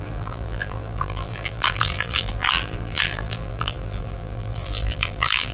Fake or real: fake